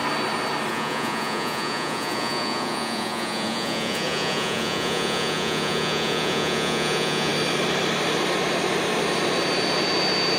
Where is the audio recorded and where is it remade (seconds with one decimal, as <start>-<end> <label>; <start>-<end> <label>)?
0.0-0.7 recorded; 0.7-7.3 remade; 7.3-10.4 recorded